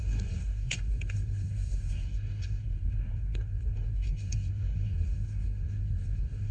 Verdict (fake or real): fake